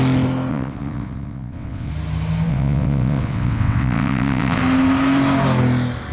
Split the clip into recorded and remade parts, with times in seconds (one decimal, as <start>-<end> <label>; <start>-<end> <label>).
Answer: 0.0-0.5 recorded; 0.5-1.9 remade; 1.9-2.5 recorded; 2.5-4.6 remade; 4.6-6.1 recorded